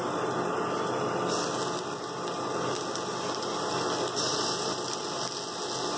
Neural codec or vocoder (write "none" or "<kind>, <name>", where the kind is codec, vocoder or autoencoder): none